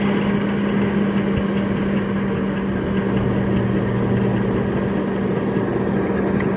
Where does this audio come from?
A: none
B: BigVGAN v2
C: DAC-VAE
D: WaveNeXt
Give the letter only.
A